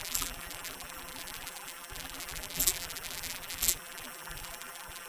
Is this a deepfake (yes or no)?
yes